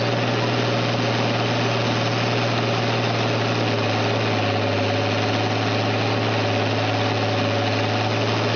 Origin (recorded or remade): recorded